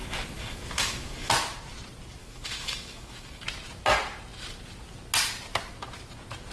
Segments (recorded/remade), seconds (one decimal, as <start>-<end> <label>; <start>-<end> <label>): 0.0-1.3 remade; 1.3-2.2 recorded; 2.2-3.4 remade; 3.4-6.5 recorded

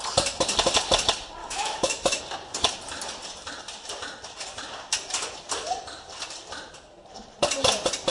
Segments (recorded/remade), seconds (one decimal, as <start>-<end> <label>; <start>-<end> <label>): 0.0-1.4 recorded; 1.4-2.2 remade; 2.2-8.1 recorded

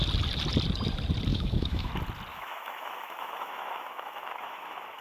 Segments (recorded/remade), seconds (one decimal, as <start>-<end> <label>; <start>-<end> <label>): 0.0-1.3 recorded; 1.3-1.9 remade; 1.9-2.3 recorded; 2.3-5.0 remade

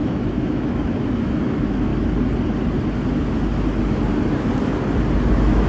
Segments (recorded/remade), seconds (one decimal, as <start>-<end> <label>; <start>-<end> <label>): 0.0-1.9 remade; 1.9-5.3 recorded; 5.3-5.7 remade

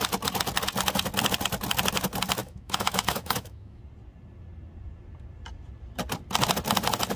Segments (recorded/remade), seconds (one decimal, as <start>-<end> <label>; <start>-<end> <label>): 0.0-2.4 recorded; 2.4-3.8 remade; 3.8-7.2 recorded